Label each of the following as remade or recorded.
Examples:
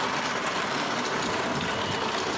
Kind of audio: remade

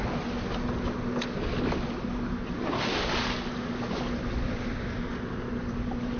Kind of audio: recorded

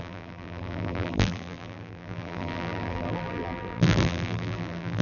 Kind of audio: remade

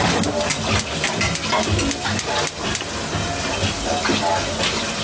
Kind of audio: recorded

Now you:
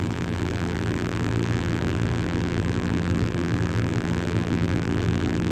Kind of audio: remade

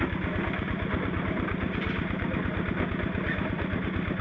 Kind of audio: remade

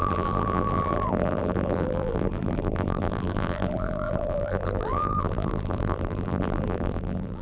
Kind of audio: remade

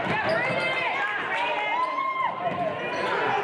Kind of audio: recorded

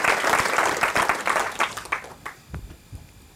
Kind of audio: remade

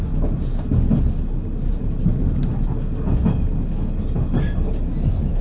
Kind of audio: recorded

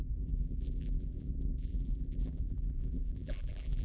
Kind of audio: remade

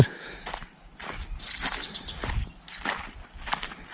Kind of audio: recorded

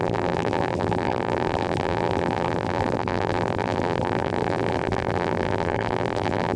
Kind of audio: remade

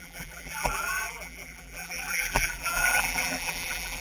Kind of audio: remade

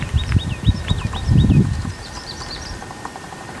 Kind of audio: remade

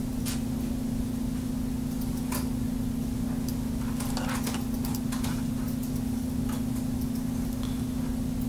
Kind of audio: recorded